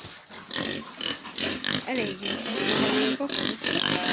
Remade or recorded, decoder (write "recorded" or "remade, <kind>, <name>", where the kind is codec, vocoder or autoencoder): recorded